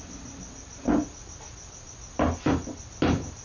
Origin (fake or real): real